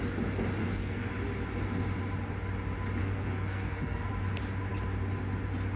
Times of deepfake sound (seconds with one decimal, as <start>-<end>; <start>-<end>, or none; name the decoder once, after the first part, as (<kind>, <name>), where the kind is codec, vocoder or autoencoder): 0.6-1.1 (codec, SNAC); 3.0-4.1